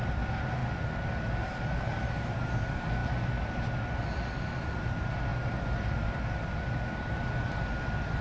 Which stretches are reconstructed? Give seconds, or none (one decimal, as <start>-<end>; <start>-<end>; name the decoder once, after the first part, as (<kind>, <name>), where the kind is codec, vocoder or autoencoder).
5.3-6.2 (vocoder, BigVGAN v2)